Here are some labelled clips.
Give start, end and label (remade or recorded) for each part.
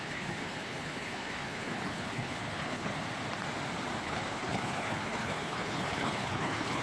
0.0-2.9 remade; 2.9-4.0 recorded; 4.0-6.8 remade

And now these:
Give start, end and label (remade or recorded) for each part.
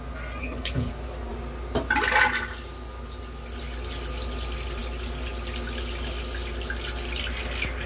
0.0-0.4 recorded; 0.4-0.9 remade; 0.9-7.9 recorded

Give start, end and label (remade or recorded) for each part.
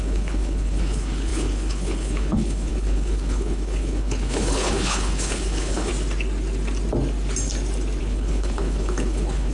0.0-5.9 remade; 5.9-8.0 recorded; 8.0-9.5 remade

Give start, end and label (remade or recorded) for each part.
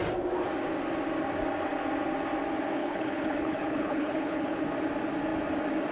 0.0-2.8 recorded; 2.8-4.7 remade; 4.7-5.9 recorded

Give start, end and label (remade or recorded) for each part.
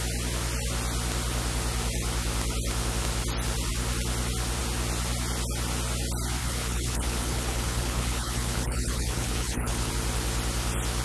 0.0-6.4 recorded; 6.4-9.9 remade; 9.9-11.0 recorded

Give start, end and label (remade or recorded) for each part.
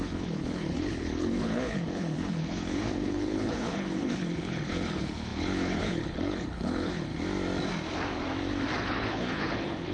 0.0-7.1 remade; 7.1-8.8 recorded; 8.8-9.9 remade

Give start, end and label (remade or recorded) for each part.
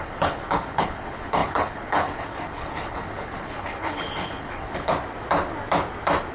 0.0-4.9 remade; 4.9-6.3 recorded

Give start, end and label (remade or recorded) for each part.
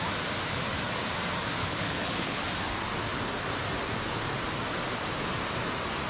0.0-1.6 recorded; 1.6-2.4 remade; 2.4-6.1 recorded